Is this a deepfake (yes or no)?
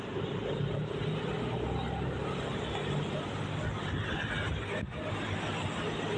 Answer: no